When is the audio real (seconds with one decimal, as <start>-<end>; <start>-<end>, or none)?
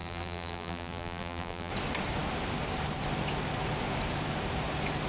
1.7-5.1